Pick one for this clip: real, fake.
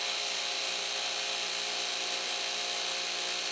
real